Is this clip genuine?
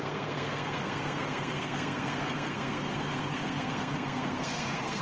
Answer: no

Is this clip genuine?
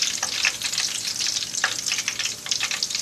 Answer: yes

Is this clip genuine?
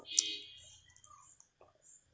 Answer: yes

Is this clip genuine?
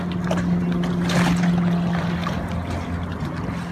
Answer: yes